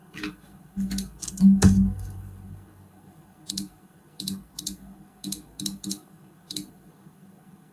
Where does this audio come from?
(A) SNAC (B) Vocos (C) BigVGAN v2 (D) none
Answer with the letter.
A